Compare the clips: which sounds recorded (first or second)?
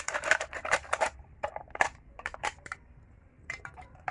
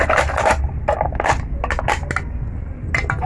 second